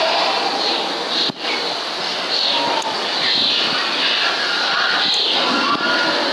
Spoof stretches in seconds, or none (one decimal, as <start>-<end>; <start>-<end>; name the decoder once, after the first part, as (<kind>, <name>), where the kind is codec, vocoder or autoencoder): none